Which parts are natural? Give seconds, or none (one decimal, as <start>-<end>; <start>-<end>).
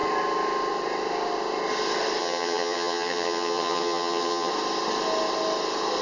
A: 0.0-2.2; 4.5-6.0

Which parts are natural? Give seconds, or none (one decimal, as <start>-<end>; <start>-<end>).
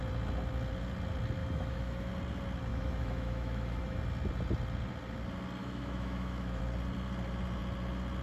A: 0.0-1.4; 2.1-2.7; 4.0-5.6; 6.6-8.2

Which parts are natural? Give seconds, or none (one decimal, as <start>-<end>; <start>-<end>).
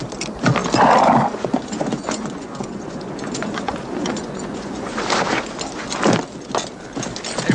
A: 0.0-1.3; 5.0-7.5